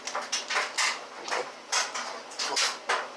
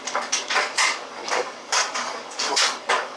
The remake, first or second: second